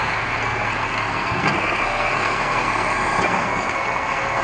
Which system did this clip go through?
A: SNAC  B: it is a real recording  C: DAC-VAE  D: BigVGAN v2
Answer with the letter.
A